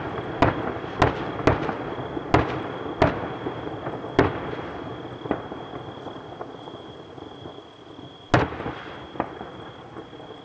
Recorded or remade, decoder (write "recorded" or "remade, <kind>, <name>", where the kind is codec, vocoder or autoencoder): recorded